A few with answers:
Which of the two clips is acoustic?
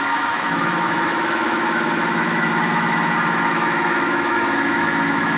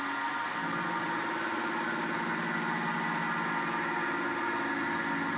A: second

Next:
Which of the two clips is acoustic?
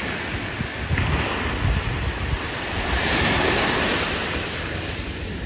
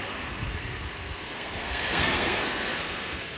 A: first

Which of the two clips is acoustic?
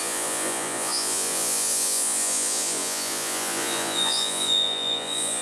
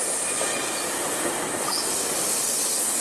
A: second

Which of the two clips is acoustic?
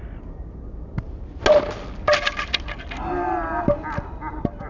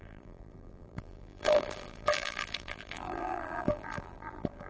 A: first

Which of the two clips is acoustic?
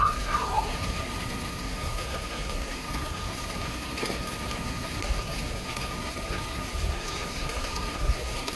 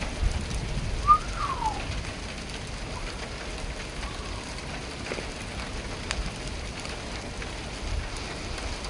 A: second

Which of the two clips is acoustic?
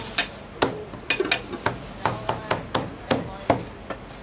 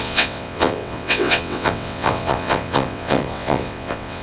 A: first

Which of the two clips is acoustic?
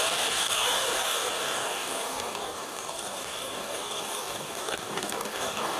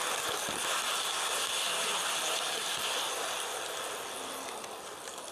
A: second